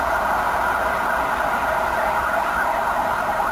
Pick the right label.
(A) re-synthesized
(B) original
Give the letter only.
B